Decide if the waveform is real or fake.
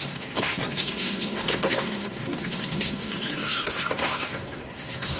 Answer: fake